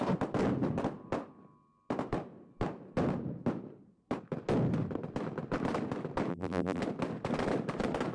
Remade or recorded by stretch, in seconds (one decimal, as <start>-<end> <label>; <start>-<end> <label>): 0.0-6.3 recorded; 6.3-6.8 remade; 6.8-8.1 recorded